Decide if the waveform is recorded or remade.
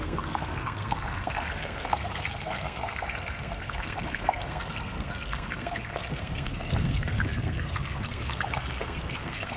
remade